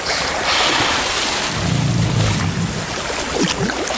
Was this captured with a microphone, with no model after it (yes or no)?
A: yes